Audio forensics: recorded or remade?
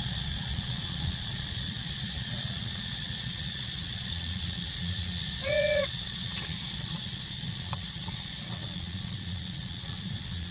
remade